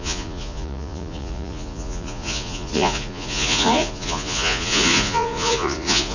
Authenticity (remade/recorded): remade